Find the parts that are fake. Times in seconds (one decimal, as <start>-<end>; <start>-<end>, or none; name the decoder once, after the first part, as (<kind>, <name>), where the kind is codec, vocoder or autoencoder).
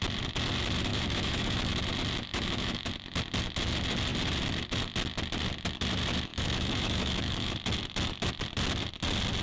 0.9-1.7 (autoencoder, DAC-VAE); 2.3-2.9; 6.3-7.5